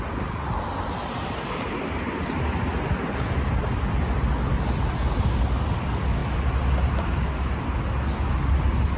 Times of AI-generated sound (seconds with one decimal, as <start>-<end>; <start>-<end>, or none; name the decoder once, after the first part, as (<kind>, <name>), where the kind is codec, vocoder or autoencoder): none